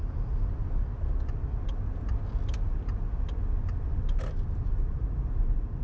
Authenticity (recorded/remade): recorded